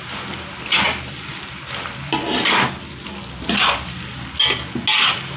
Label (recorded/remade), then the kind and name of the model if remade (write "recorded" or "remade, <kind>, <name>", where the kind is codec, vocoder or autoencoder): recorded